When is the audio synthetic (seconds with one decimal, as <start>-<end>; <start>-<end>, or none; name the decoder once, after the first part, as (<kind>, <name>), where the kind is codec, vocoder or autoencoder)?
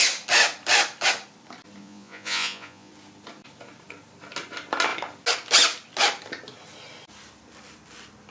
1.8-2.9 (vocoder, Vocos)